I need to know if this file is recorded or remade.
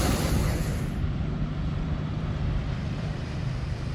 remade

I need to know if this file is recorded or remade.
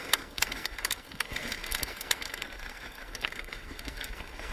remade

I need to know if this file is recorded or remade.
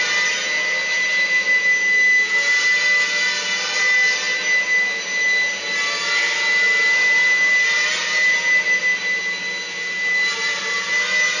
recorded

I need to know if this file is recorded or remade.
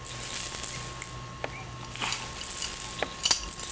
recorded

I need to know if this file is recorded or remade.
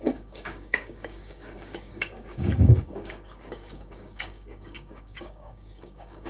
remade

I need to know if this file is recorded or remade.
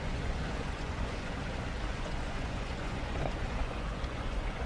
remade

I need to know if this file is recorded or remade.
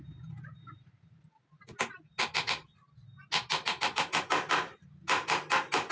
recorded